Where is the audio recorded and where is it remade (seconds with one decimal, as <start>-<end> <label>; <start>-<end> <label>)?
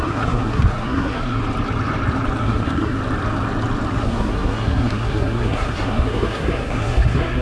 0.0-1.4 remade; 1.4-2.4 recorded; 2.4-3.0 remade; 3.0-4.0 recorded; 4.0-7.4 remade